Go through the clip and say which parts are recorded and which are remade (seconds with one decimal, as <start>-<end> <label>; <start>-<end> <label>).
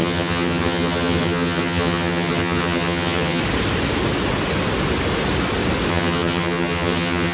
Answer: 0.0-3.4 remade; 3.4-5.9 recorded; 5.9-7.3 remade